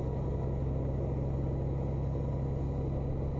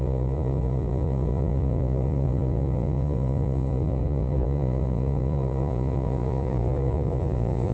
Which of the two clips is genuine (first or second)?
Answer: first